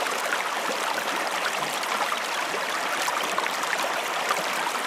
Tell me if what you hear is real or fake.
fake